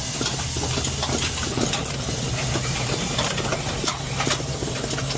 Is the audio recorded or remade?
recorded